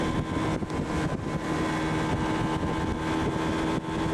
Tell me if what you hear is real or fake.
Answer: real